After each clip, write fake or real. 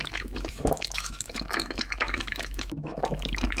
fake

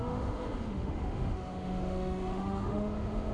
fake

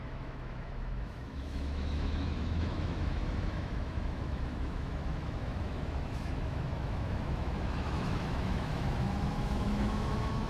fake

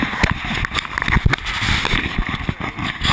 real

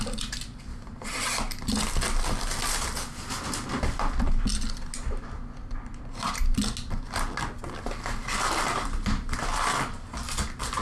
real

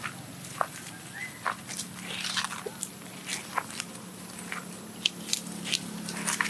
real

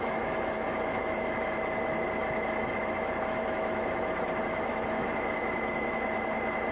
fake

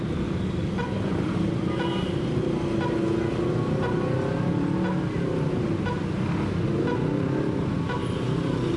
real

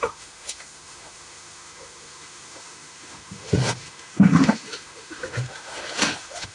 fake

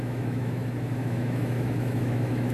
fake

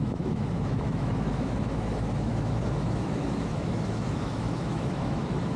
fake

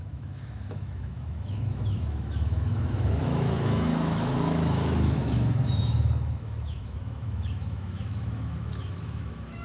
fake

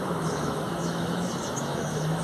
fake